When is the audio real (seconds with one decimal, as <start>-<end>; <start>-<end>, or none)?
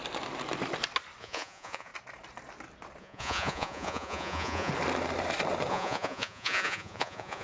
0.0-1.2; 1.9-3.0; 4.7-5.7